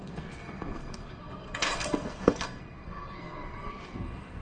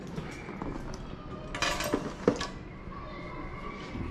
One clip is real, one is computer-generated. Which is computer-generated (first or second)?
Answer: first